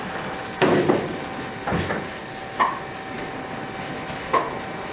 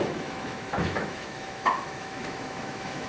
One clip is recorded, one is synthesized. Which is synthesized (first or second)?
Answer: second